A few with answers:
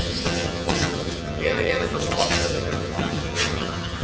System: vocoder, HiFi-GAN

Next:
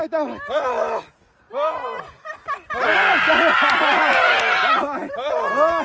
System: none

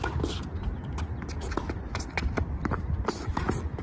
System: none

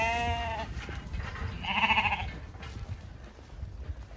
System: none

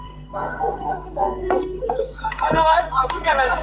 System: codec, SNAC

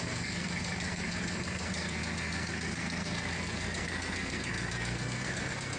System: codec, SNAC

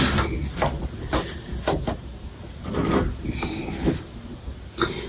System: none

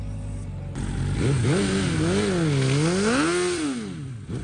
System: none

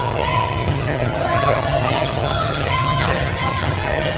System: vocoder, HiFi-GAN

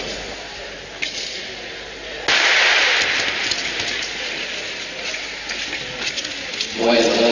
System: none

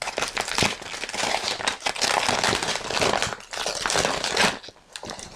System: none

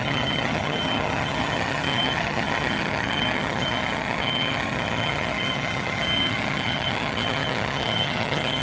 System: vocoder, HiFi-GAN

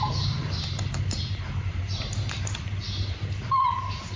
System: none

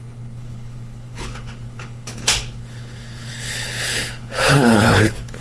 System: codec, HILCodec